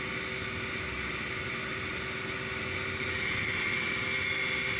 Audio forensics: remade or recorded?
recorded